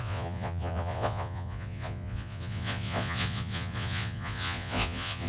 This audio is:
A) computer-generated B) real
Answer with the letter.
A